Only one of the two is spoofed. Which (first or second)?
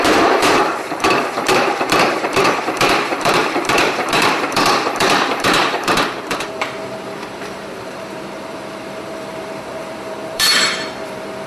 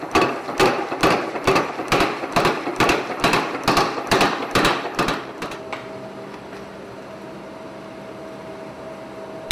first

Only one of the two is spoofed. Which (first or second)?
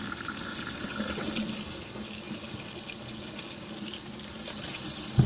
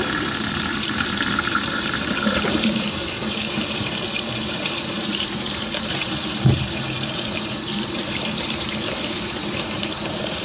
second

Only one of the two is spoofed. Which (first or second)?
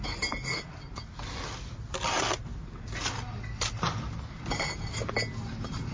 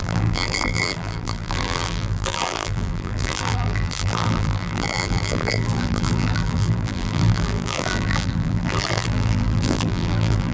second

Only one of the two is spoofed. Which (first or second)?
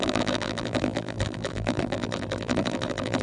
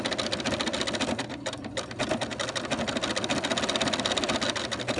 first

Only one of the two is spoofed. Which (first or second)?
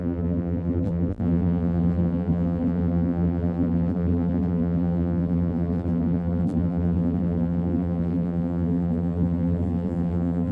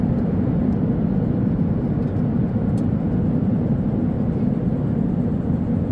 first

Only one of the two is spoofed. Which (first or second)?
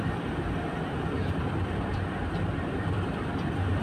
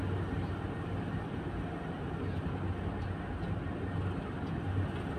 first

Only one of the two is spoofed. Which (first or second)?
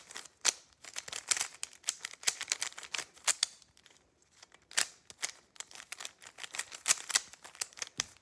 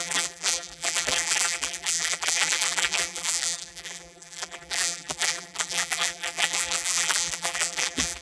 second